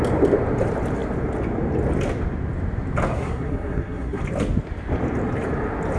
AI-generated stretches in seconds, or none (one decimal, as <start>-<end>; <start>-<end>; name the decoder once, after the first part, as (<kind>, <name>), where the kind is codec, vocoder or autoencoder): 3.1-4.2 (codec, SNAC)